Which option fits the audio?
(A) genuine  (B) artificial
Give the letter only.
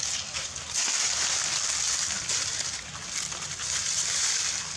A